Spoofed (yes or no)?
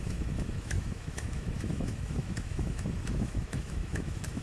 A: yes